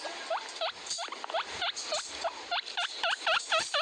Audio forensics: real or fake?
real